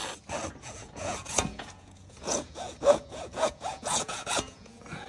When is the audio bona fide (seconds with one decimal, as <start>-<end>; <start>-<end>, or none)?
0.0-0.6